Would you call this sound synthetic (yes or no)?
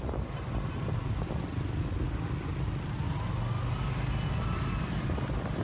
no